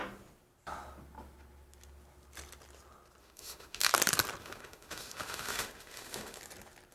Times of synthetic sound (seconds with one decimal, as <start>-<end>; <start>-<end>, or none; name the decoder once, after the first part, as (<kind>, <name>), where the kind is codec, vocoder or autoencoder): 3.2-3.9 (autoencoder, DAC-VAE); 4.4-6.4